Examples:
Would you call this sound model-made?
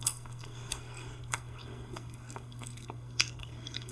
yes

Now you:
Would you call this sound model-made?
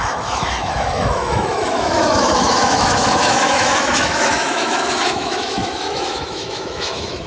yes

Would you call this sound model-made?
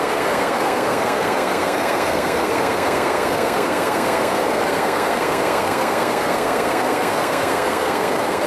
yes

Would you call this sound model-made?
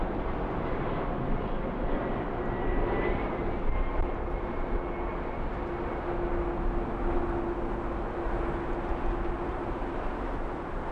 no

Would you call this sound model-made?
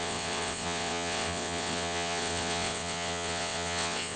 yes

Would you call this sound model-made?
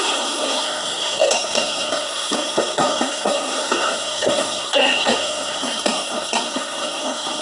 yes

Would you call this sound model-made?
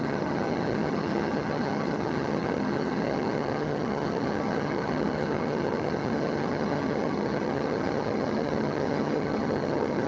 yes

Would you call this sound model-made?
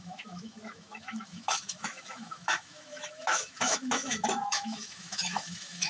yes